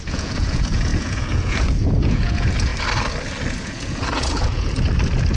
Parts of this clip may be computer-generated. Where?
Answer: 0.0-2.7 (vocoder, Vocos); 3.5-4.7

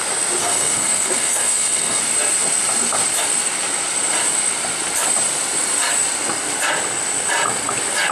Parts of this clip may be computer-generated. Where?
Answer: 0.4-2.0 (codec, SNAC)

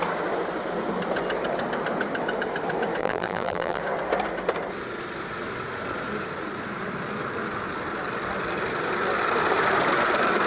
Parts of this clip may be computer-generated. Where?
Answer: 3.0-3.8 (vocoder, BigVGAN v2)